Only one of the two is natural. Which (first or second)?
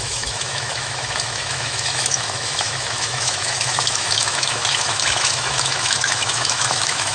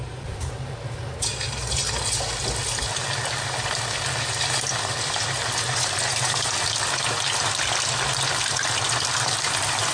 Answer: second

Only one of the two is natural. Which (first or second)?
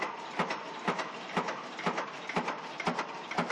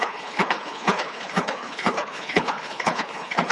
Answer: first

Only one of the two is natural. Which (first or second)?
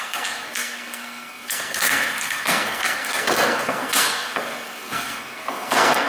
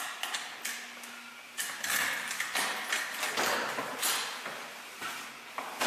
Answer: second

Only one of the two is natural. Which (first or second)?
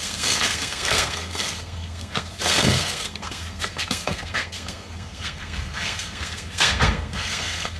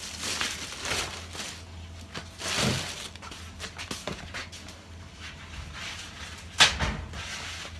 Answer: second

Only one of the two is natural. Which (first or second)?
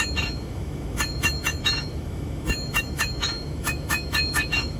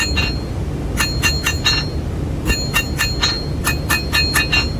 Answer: second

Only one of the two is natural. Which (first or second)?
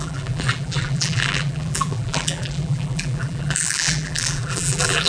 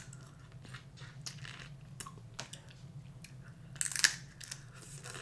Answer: second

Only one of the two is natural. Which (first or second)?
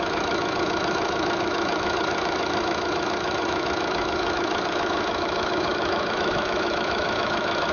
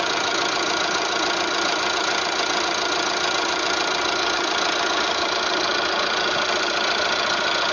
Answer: second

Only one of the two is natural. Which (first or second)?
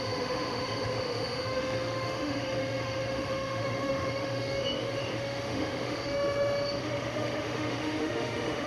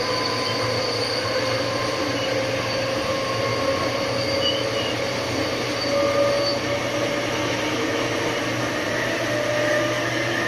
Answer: second